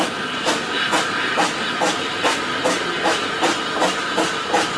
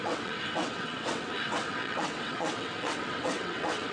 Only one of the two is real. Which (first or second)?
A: first